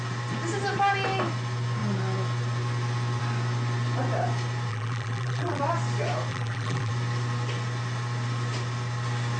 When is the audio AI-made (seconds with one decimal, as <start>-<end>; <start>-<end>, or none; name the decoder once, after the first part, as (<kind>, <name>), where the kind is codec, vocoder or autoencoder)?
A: 4.7-5.6 (vocoder, BigVGAN v2); 6.3-6.9

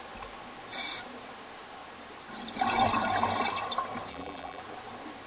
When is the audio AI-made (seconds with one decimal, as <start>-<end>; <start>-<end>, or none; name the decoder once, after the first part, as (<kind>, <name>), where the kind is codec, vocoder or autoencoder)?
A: 4.1-4.6 (vocoder, BigVGAN v2)